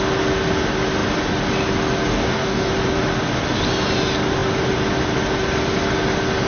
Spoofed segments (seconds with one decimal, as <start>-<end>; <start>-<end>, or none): 2.1-2.7